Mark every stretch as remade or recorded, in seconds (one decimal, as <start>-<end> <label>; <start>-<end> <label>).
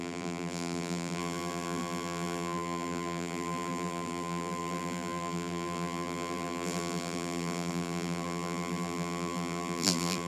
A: 0.0-10.3 remade